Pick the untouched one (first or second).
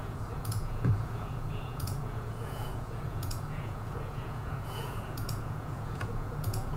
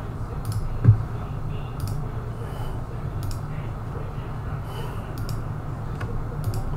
second